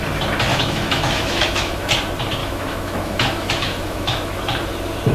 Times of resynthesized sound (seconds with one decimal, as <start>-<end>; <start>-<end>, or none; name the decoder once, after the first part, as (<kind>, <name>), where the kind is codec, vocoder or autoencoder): 0.5-1.9 (autoencoder, DAC-VAE); 2.4-4.4